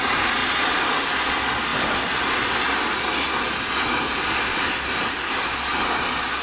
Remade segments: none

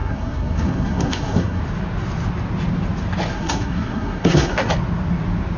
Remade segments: 0.0-1.6 (codec, SNAC); 3.3-4.7

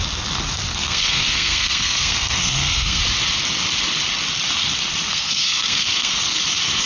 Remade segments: 0.7-3.0 (codec, SNAC); 5.1-6.1

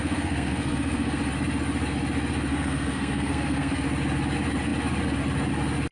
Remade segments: 0.0-1.2 (codec, SNAC); 2.5-3.8

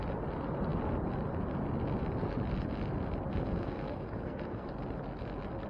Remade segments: 3.3-4.7 (codec, SNAC)

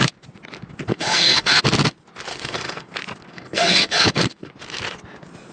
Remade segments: 0.9-1.6 (codec, SNAC); 2.3-2.9; 3.3-4.5